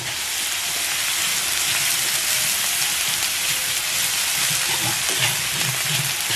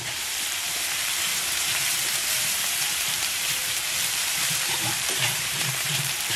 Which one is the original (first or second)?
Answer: first